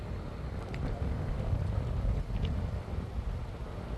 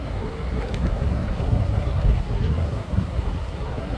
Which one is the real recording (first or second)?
first